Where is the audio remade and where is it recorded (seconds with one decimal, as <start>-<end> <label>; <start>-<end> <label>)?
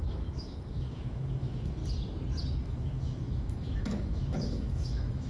0.0-1.8 remade; 1.8-2.6 recorded; 2.6-5.3 remade